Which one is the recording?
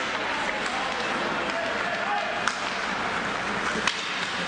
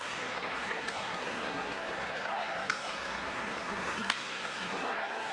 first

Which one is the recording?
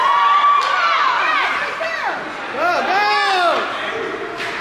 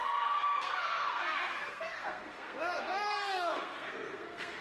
first